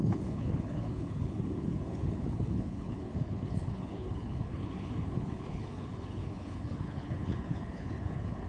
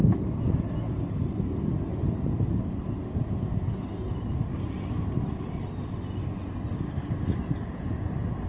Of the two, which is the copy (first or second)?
first